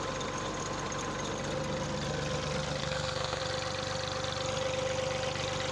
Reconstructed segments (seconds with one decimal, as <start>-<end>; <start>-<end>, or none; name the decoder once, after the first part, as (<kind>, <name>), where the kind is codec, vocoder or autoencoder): 2.8-3.4 (codec, SNAC)